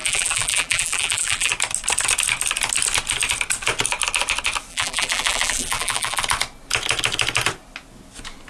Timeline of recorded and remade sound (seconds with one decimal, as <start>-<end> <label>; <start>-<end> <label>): 0.0-1.5 remade; 1.5-4.7 recorded; 4.7-6.2 remade; 6.2-8.5 recorded